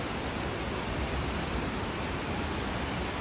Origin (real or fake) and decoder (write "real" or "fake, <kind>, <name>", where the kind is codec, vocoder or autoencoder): real